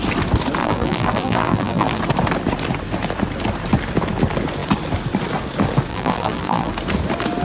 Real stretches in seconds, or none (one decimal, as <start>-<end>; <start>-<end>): 0.0-0.6; 2.0-5.9; 6.7-7.4